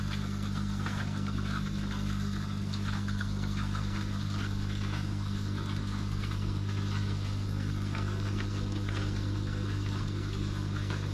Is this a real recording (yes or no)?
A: no